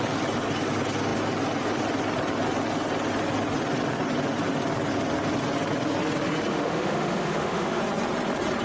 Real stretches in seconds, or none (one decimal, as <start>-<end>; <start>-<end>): 0.0-6.5; 7.8-8.6